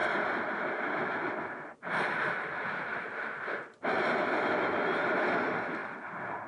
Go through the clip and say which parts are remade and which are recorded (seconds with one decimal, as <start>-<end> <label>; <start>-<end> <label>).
0.0-6.5 recorded